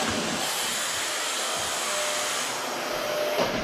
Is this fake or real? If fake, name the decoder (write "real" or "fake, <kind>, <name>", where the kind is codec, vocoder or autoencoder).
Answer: real